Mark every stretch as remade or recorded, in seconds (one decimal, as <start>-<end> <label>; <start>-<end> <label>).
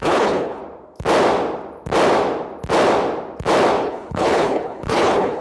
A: 0.0-0.6 remade; 0.6-3.8 recorded; 3.8-5.4 remade